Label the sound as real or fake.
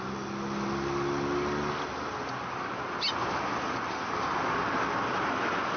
real